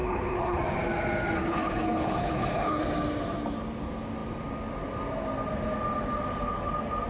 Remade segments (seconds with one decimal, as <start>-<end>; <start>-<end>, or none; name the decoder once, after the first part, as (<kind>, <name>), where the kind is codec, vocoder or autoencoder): 0.0-0.6 (codec, HILCodec); 1.4-2.8